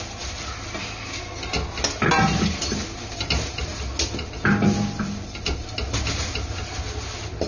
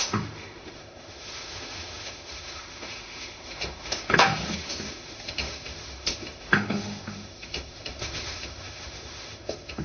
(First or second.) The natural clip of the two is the first